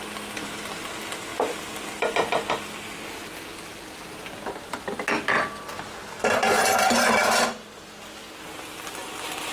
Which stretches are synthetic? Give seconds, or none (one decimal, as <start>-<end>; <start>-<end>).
none